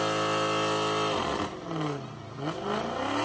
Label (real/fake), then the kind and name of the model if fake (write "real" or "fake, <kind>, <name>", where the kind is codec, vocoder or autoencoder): real